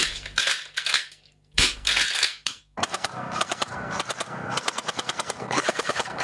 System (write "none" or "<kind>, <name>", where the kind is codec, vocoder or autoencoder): codec, SNAC